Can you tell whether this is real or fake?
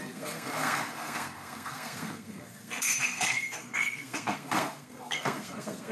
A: fake